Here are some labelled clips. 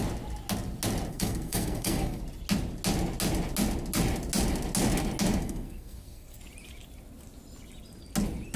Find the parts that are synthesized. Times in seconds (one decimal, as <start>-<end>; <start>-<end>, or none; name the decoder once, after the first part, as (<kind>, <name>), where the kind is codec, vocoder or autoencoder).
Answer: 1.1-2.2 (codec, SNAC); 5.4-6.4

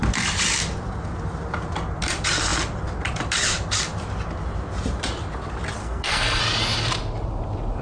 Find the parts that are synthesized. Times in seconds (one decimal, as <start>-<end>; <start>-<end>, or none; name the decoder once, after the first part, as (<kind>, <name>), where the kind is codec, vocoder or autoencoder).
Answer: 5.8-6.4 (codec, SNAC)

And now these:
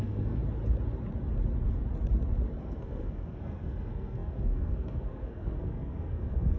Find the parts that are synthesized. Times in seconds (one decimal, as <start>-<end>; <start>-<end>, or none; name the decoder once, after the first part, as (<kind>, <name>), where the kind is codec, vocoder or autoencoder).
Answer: 0.0-0.4 (codec, SNAC); 2.6-6.6

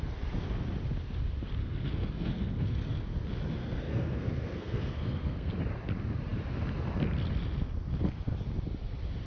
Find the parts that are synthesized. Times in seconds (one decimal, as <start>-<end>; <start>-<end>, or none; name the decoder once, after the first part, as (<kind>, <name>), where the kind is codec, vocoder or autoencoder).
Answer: 1.6-3.2 (codec, SNAC); 3.6-5.5

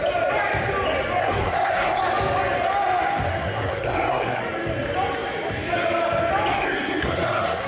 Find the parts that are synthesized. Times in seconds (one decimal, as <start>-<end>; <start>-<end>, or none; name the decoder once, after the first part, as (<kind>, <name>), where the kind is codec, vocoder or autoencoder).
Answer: 1.2-2.0 (codec, SNAC); 3.3-4.4; 6.5-7.7

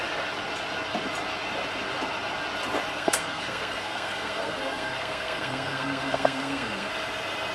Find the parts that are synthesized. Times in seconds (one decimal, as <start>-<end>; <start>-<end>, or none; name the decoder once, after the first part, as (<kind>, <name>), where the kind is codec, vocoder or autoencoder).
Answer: 2.9-6.9 (codec, SNAC)

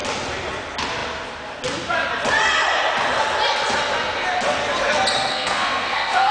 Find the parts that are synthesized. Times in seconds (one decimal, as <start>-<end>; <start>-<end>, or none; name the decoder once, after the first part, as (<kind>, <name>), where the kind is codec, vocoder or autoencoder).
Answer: 5.3-6.3 (codec, SNAC)